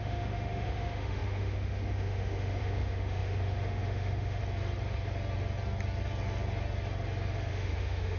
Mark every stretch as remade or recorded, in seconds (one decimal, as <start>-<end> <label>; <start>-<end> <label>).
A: 0.0-4.4 remade; 4.4-7.5 recorded; 7.5-8.2 remade